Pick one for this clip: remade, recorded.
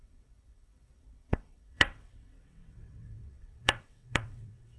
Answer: remade